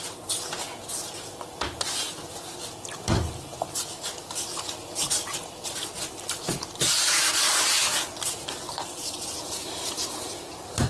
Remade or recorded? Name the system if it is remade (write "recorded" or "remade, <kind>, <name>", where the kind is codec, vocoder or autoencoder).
recorded